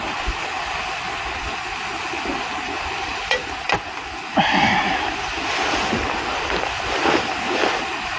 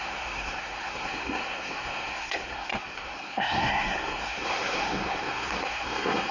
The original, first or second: first